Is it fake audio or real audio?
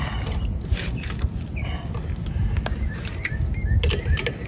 real